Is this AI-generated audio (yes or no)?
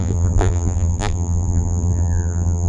yes